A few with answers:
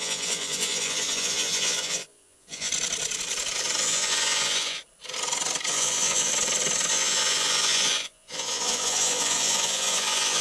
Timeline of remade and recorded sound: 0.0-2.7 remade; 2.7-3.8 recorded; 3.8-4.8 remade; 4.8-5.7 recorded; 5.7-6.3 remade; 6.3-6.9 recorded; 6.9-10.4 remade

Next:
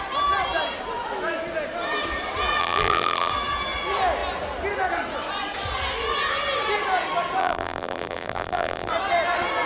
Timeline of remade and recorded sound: 0.0-2.6 recorded; 2.6-3.3 remade; 3.3-7.4 recorded; 7.4-8.9 remade; 8.9-9.7 recorded

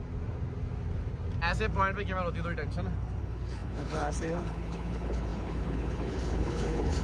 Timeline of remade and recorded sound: 0.0-3.2 recorded; 3.2-7.0 remade

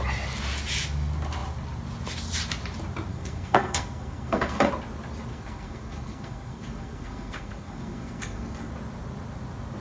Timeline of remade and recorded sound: 0.0-3.1 recorded; 3.1-4.7 remade; 4.7-5.3 recorded; 5.3-8.7 remade; 8.7-9.8 recorded

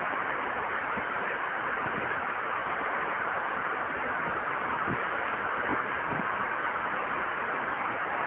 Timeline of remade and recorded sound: 0.0-8.3 recorded